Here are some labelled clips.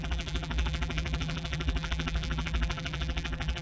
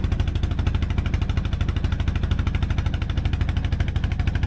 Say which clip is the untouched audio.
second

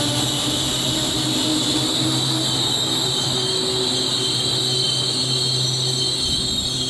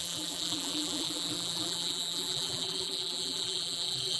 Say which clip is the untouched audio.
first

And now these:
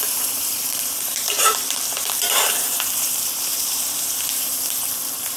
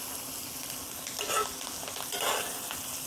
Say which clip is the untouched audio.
second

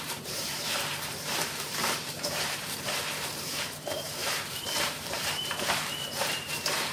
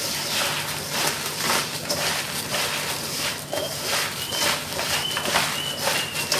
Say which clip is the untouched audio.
second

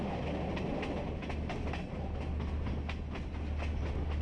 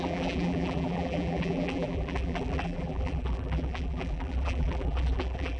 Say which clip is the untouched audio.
first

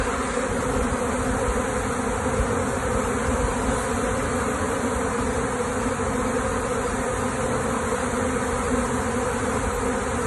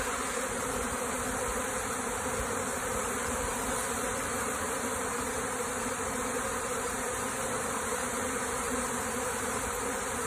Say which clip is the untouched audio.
first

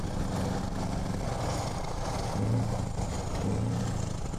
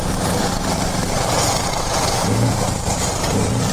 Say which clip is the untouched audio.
first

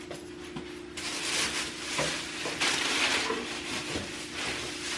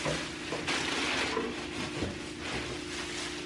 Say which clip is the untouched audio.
second